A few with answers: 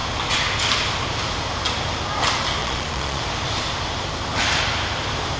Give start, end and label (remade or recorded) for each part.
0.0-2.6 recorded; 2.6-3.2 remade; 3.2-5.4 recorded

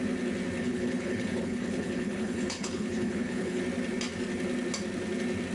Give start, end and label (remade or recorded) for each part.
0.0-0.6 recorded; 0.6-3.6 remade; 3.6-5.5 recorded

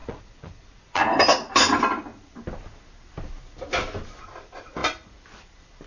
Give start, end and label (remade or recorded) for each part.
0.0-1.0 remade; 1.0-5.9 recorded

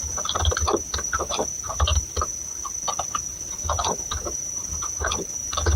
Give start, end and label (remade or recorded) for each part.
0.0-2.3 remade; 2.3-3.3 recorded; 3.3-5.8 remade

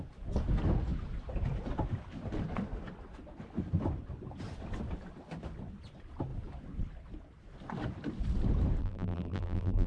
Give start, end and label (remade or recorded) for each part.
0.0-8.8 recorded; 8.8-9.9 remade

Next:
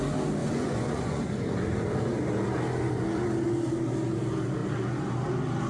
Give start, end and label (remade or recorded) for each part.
0.0-0.4 recorded; 0.4-1.2 remade; 1.2-5.7 recorded